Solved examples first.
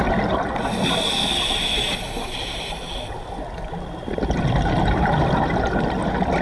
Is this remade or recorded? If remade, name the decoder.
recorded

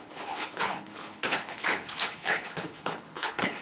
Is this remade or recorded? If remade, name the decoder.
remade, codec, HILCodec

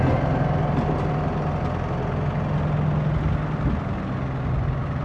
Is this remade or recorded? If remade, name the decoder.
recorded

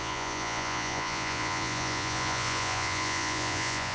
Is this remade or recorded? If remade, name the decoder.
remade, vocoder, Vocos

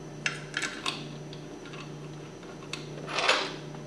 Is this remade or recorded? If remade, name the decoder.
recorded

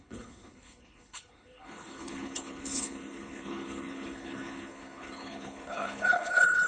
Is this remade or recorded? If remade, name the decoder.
remade, codec, HILCodec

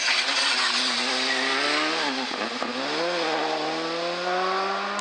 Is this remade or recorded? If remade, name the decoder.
recorded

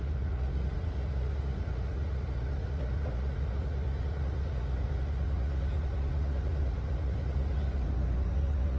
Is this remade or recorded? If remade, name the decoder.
remade, vocoder, Vocos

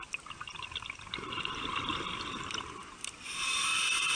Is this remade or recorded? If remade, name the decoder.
recorded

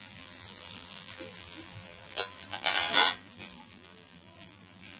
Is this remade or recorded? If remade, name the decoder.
remade, vocoder, BigVGAN v2